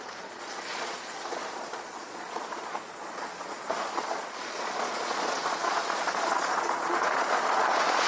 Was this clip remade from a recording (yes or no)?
yes